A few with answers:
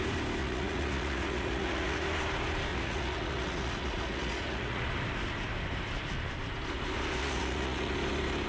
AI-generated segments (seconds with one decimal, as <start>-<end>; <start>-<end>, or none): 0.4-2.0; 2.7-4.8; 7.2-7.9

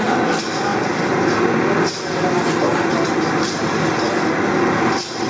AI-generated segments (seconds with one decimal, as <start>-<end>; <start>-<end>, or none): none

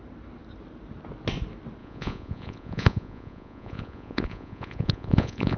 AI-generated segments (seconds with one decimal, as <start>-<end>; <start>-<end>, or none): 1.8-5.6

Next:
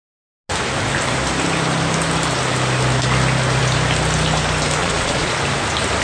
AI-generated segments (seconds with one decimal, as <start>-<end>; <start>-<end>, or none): 4.8-5.4

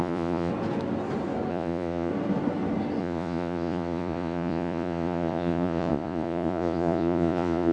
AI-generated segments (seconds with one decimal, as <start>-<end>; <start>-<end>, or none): 0.0-0.5; 1.5-2.1; 3.0-7.7